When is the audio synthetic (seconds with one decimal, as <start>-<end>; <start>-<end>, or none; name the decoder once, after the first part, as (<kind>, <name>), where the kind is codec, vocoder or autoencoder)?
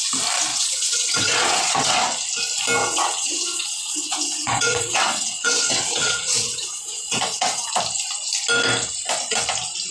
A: 0.5-2.0 (vocoder, WaveNeXt); 2.8-7.7